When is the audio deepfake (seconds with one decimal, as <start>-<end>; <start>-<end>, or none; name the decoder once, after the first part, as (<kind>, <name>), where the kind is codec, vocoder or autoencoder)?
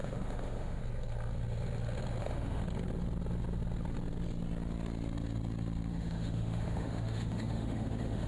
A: 0.0-0.8 (autoencoder, DAC-VAE); 2.2-2.6; 5.9-8.3